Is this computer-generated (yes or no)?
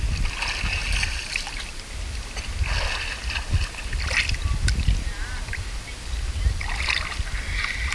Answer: no